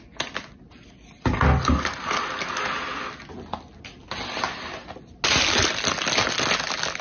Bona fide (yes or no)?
yes